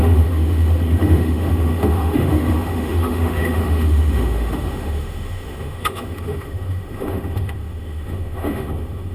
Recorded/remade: remade